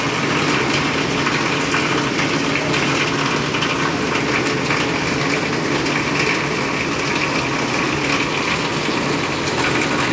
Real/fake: real